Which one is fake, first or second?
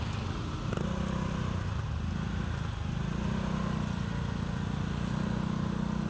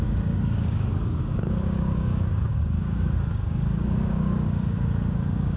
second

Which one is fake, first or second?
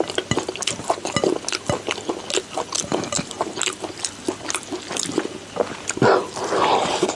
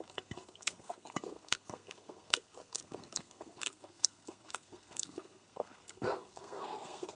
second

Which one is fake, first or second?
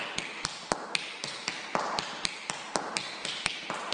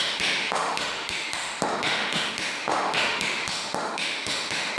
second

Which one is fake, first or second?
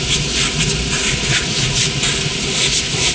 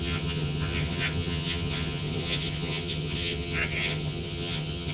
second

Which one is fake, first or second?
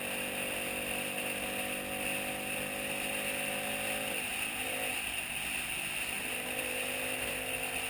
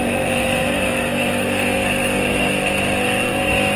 second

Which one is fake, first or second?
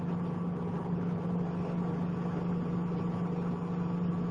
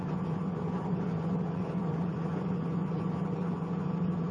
second